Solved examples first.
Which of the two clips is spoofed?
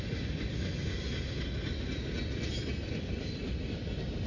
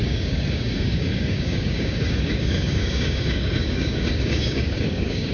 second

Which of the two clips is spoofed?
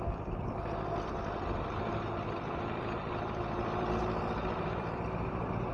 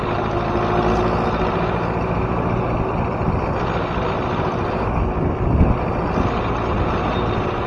first